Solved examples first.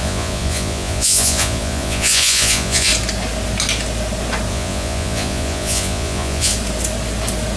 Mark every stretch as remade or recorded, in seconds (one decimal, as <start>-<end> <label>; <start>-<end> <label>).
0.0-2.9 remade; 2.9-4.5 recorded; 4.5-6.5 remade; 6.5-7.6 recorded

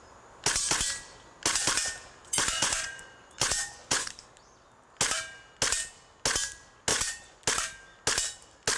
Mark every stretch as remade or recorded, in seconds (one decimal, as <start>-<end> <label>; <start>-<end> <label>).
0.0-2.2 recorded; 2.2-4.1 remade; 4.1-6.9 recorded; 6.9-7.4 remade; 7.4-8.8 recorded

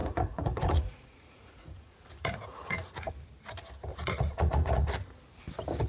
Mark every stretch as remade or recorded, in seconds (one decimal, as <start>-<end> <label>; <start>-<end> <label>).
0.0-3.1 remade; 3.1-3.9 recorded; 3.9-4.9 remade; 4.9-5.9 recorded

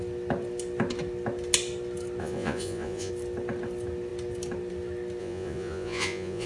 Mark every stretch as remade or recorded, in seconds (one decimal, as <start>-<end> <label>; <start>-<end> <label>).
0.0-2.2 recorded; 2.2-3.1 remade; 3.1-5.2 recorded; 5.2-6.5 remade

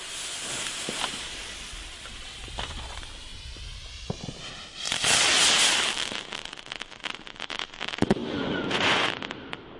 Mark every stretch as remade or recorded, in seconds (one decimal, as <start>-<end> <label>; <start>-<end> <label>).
0.0-8.2 recorded; 8.2-9.1 remade; 9.1-9.8 recorded